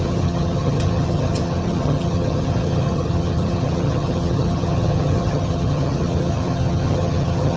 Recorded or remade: remade